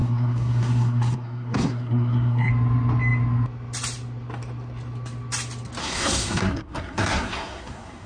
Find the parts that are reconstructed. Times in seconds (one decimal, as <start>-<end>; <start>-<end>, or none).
0.0-2.5; 5.8-8.1